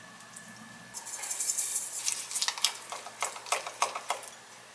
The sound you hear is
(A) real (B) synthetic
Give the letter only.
A